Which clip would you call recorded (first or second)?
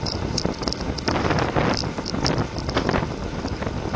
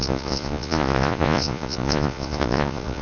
first